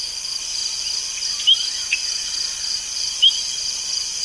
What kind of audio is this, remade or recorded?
recorded